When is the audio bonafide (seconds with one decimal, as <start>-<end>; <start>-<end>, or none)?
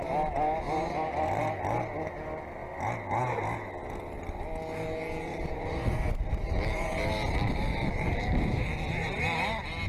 0.0-5.3; 9.2-9.9